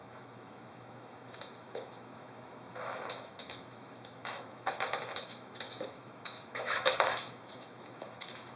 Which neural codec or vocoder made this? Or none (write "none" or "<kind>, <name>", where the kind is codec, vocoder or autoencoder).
autoencoder, DAC-VAE